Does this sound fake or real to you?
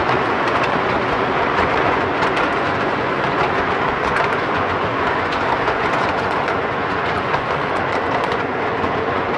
fake